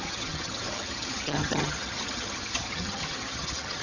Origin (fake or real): fake